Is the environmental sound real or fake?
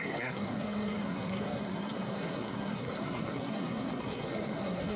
fake